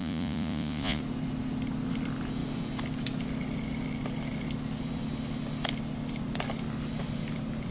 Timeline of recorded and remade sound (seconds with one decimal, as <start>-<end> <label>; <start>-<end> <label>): 0.0-1.0 remade; 1.0-7.7 recorded

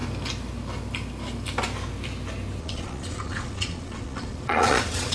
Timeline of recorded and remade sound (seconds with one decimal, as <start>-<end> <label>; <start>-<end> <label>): 0.0-2.6 recorded; 2.6-5.1 remade

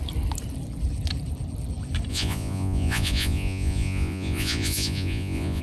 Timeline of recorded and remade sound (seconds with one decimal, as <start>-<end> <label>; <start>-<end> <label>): 0.0-2.1 recorded; 2.1-5.6 remade

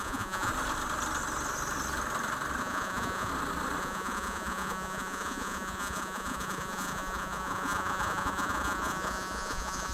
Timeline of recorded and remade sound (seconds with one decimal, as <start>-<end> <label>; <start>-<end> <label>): 0.0-0.5 remade; 0.5-2.6 recorded; 2.6-3.3 remade; 3.3-3.8 recorded; 3.8-9.9 remade

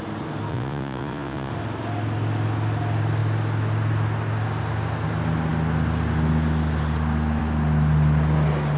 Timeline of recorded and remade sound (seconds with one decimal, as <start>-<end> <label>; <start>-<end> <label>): 0.0-0.5 recorded; 0.5-1.5 remade; 1.5-8.8 recorded

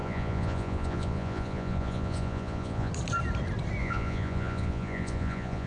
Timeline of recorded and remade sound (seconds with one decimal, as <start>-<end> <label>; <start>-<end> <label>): 0.0-2.9 remade; 2.9-3.8 recorded; 3.8-5.7 remade